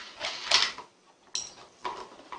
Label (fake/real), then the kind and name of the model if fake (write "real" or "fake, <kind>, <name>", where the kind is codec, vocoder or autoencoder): real